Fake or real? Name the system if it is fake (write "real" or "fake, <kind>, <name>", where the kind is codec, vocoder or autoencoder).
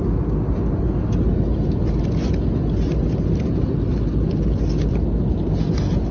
real